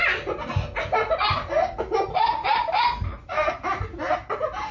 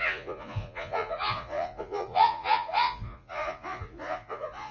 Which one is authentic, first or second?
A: first